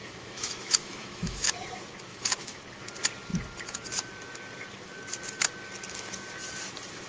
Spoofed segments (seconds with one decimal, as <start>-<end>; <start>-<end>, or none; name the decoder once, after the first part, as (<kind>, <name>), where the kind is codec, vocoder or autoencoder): 0.0-1.5 (autoencoder, DAC-VAE); 2.1-2.6